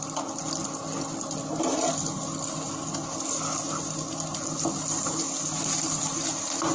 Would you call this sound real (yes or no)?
yes